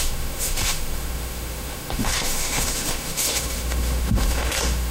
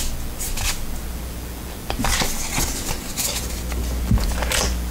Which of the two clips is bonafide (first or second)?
second